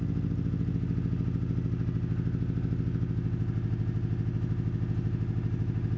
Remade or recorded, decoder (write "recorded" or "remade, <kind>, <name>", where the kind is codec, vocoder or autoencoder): recorded